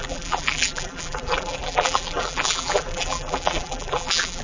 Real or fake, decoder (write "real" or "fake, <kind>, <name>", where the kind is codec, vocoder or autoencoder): fake, vocoder, BigVGAN v2